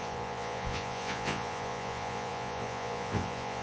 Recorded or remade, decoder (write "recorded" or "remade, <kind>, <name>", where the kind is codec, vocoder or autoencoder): remade, vocoder, Vocos